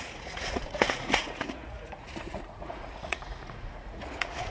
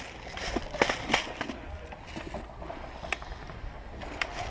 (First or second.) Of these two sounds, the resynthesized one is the first